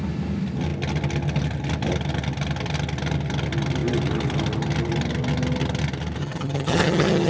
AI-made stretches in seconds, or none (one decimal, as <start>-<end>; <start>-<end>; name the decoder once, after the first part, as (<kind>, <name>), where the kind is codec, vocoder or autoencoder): 6.2-7.3 (vocoder, HiFi-GAN)